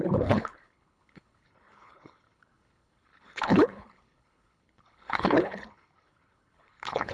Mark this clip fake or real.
fake